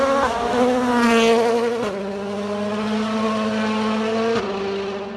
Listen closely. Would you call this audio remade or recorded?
recorded